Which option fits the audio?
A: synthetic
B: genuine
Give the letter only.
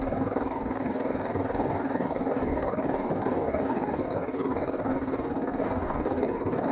A